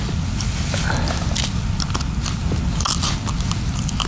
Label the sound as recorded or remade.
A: recorded